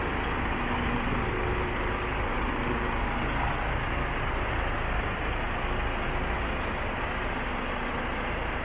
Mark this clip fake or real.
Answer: real